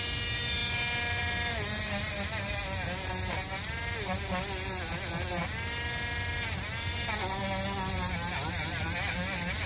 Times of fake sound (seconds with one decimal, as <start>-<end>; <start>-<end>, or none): none

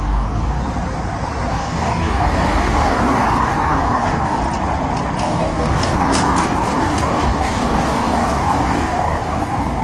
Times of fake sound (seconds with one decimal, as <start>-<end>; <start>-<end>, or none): 0.0-0.6; 1.5-4.4; 5.2-9.8

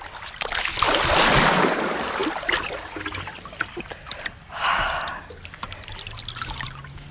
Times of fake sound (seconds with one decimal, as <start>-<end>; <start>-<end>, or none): none

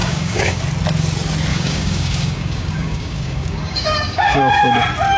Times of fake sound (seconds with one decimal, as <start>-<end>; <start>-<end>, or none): 0.0-0.6; 1.5-4.6

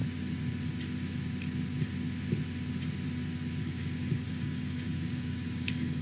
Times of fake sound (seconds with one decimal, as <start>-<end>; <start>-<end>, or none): 3.6-6.0